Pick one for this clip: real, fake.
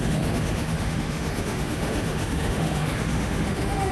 fake